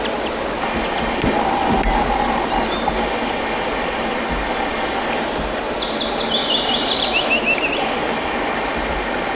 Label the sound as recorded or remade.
recorded